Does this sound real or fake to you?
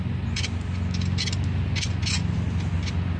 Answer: real